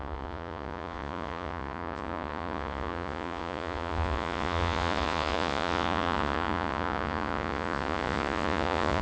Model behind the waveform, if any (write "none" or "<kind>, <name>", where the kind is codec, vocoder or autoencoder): vocoder, Vocos